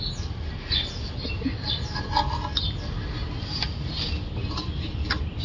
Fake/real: real